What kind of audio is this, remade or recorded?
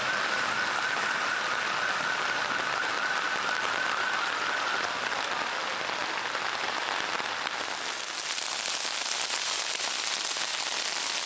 recorded